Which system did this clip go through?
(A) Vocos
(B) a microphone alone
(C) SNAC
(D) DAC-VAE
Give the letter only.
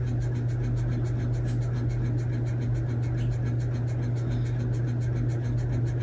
B